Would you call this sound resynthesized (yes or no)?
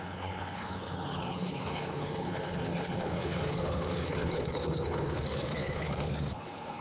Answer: yes